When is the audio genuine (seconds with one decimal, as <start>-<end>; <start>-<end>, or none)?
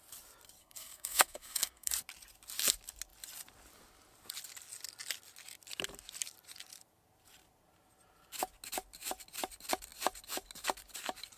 0.0-0.6; 1.9-11.4